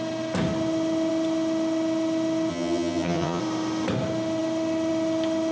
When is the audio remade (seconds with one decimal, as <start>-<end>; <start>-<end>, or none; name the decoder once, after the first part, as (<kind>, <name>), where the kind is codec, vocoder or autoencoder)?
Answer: 2.5-3.4 (vocoder, HiFi-GAN)